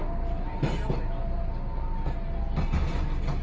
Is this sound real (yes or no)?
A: yes